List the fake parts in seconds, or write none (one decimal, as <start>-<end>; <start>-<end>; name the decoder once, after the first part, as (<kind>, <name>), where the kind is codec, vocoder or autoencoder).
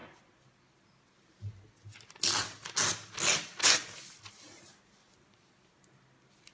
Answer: none